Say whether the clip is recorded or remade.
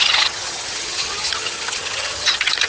remade